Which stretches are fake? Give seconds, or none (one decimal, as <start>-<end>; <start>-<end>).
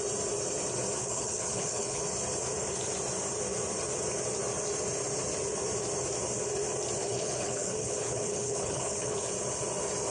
1.0-2.0; 7.0-9.3